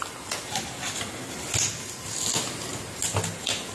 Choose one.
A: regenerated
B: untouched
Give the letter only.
B